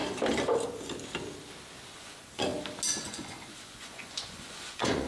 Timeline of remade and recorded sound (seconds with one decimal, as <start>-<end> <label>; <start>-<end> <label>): 0.0-1.9 recorded; 1.9-2.5 remade; 2.5-3.0 recorded; 3.0-5.1 remade